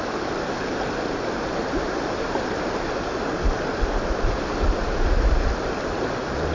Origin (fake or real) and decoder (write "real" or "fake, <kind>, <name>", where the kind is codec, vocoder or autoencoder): real